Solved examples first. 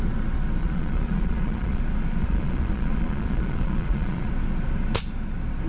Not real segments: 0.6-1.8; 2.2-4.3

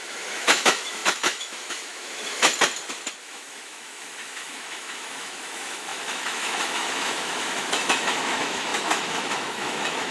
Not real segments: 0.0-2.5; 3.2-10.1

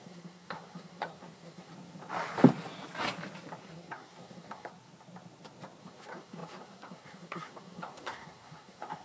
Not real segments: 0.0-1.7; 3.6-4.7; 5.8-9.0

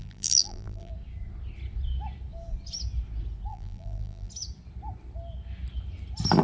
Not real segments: 0.0-0.9; 3.5-4.3